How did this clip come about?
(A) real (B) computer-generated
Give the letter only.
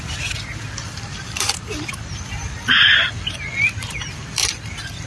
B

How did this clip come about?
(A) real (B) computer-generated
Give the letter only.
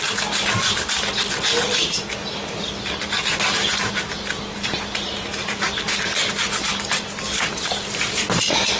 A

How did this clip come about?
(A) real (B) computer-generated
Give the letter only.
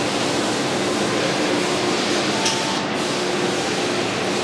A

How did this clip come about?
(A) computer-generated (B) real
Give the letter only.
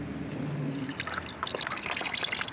B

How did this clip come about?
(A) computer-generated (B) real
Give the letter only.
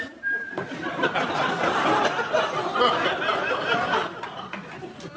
B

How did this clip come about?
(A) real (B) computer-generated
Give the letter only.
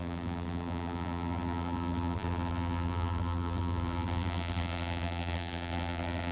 B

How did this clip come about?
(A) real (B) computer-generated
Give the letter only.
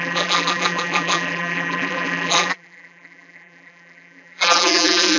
B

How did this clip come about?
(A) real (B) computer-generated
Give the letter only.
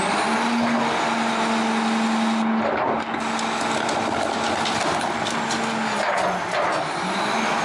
A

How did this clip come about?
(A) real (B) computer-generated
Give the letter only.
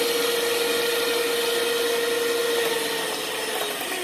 A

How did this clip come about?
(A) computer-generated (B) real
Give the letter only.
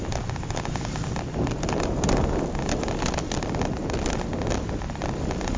B